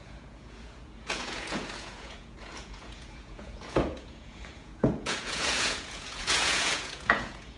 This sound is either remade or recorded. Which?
remade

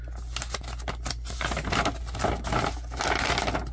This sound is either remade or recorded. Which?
recorded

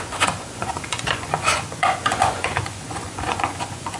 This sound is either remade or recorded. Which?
remade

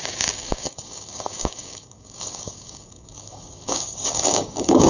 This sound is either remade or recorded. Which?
remade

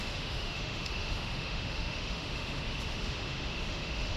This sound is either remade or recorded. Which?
remade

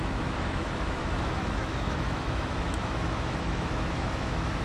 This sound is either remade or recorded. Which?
remade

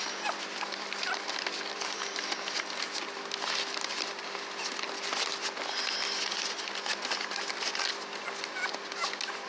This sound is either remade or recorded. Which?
recorded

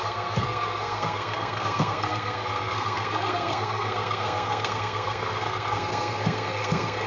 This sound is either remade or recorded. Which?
remade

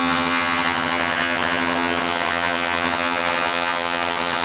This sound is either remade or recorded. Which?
remade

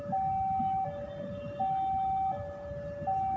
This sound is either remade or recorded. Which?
recorded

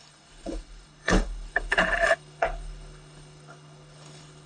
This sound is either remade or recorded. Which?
remade